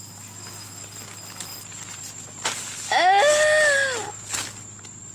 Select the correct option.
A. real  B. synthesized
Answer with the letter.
A